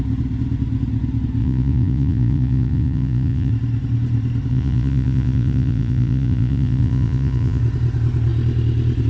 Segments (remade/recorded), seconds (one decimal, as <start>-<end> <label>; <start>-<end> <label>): 0.0-1.4 recorded; 1.4-3.5 remade; 3.5-4.5 recorded; 4.5-7.6 remade; 7.6-9.1 recorded